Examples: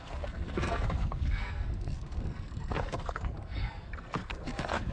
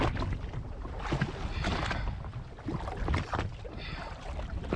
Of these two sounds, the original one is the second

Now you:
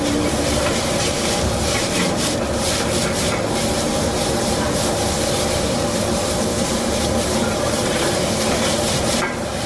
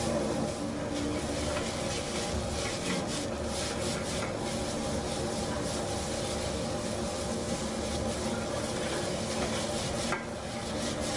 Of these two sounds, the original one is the second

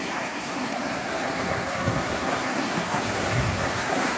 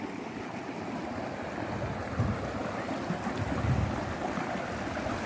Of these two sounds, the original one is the second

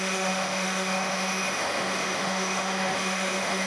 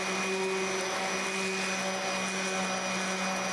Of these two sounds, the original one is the second